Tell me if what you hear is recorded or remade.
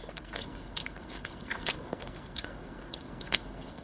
remade